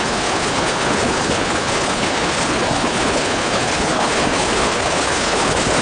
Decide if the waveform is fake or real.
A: fake